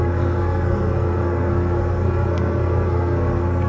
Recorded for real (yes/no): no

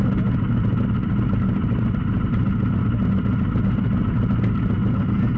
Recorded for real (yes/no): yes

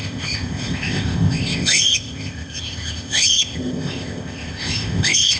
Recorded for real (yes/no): no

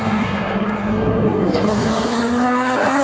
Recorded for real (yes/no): no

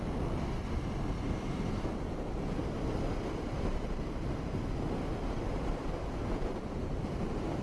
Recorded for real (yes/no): yes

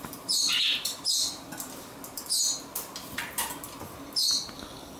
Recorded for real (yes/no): yes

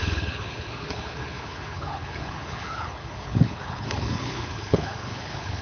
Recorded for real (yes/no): no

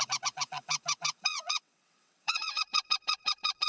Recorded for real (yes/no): no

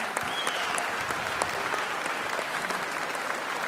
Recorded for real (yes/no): yes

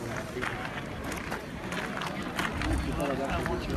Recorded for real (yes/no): yes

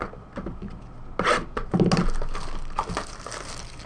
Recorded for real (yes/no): yes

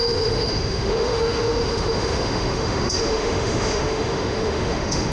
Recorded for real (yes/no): no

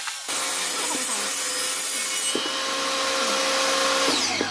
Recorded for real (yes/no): yes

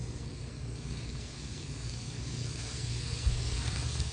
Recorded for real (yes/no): no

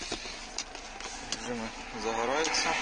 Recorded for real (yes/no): yes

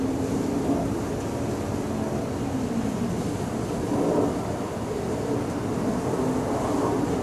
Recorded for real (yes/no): yes